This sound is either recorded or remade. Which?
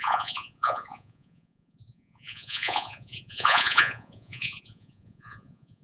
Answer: remade